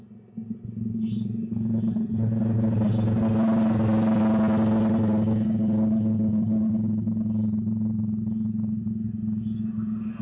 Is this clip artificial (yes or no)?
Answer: no